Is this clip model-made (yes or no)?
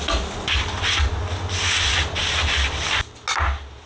no